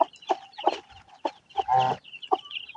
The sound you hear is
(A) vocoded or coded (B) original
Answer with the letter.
B